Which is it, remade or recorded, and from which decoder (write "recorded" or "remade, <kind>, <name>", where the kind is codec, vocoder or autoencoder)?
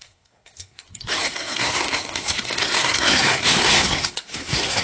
remade, codec, SNAC